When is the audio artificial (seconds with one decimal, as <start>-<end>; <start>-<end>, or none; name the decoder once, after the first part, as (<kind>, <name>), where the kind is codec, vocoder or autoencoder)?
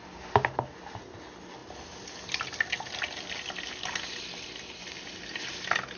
none